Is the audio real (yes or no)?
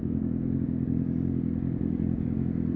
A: no